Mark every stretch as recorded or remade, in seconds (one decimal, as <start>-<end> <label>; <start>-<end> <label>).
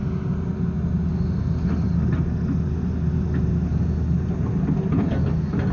0.0-5.7 recorded